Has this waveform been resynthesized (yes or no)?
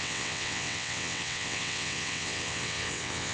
yes